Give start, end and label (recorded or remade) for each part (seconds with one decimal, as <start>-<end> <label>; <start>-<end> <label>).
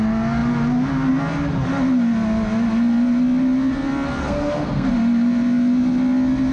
0.0-4.2 recorded; 4.2-4.9 remade; 4.9-6.5 recorded